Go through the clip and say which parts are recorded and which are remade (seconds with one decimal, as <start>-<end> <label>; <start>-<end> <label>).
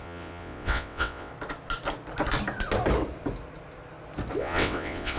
0.0-1.3 remade; 1.3-4.4 recorded; 4.4-5.2 remade